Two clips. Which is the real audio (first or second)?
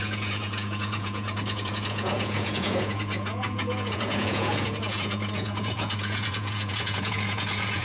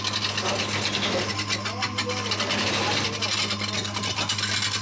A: second